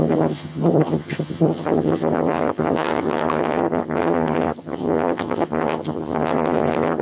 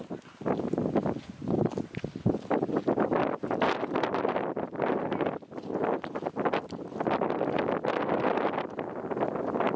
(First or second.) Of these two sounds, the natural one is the second